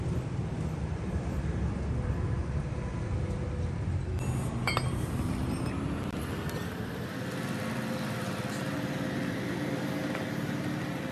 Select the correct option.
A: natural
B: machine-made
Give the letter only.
B